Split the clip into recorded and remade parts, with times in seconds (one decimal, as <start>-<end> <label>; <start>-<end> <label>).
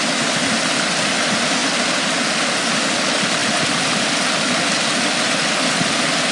0.0-6.3 recorded